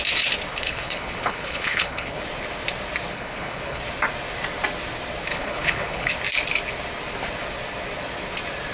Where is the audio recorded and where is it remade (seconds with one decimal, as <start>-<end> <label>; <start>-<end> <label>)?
0.0-0.5 recorded; 0.5-2.2 remade; 2.2-3.1 recorded; 3.1-3.8 remade; 3.8-5.3 recorded; 5.3-6.1 remade; 6.1-8.7 recorded